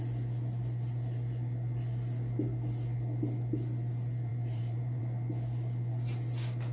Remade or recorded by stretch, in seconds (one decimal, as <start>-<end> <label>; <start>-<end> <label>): 0.0-4.3 recorded; 4.3-5.0 remade; 5.0-6.7 recorded